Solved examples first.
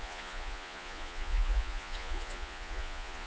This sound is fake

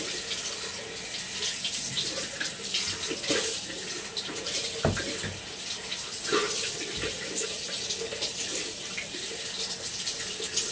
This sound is real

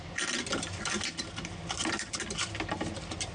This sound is real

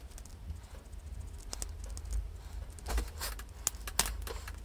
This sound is real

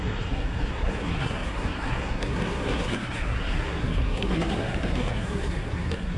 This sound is fake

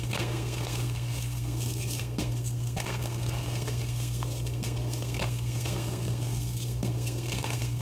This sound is fake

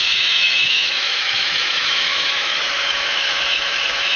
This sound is fake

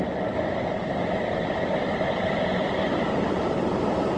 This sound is real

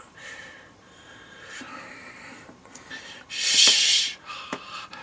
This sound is fake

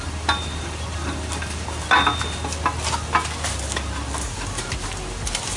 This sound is real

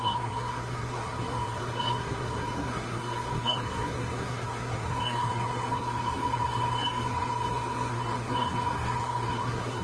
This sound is fake